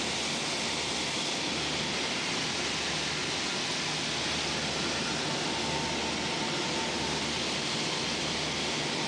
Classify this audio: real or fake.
real